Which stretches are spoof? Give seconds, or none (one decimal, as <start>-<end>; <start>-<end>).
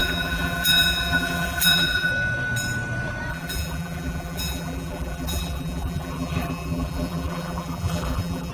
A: 0.0-2.1; 3.3-8.5